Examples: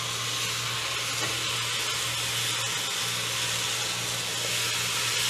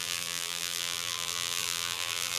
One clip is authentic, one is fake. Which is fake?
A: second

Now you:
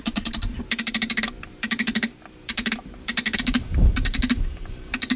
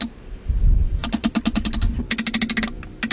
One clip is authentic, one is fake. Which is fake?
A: first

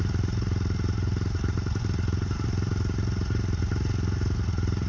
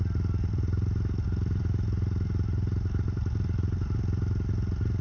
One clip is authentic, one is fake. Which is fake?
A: first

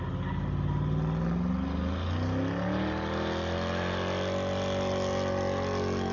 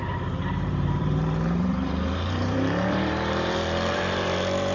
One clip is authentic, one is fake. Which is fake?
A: second